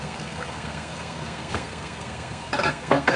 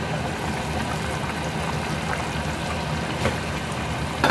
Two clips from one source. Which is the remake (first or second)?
first